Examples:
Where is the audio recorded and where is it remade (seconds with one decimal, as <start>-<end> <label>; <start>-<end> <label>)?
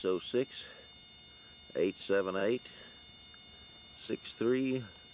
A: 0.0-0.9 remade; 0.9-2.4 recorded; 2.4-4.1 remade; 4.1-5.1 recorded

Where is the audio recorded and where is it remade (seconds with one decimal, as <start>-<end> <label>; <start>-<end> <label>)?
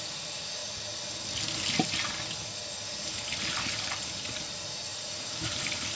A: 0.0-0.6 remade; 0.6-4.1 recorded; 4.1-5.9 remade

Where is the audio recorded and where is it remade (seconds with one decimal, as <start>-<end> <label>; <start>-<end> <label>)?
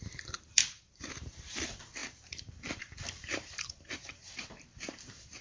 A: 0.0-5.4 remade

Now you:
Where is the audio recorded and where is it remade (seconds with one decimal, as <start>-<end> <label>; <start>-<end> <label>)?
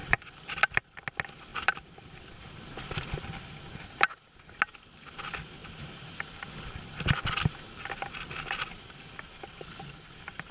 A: 0.0-0.8 remade; 0.8-1.5 recorded; 1.5-4.5 remade; 4.5-5.6 recorded; 5.6-7.0 remade; 7.0-10.5 recorded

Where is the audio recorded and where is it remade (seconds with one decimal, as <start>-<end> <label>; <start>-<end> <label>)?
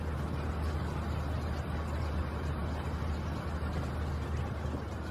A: 0.0-5.1 recorded